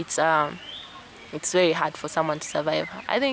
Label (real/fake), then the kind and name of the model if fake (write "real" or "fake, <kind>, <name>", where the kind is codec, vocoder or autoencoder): real